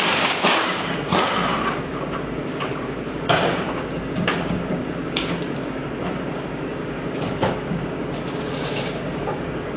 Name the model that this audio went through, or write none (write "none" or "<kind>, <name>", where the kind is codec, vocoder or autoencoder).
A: codec, DAC